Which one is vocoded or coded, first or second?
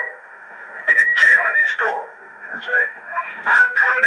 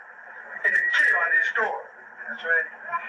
first